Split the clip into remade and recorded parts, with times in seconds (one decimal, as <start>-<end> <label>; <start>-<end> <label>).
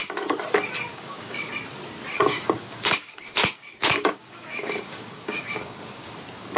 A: 0.0-0.9 recorded; 0.9-1.5 remade; 1.5-2.1 recorded; 2.1-6.1 remade; 6.1-6.6 recorded